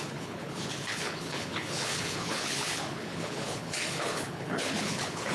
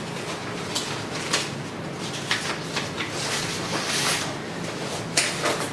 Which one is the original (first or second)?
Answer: second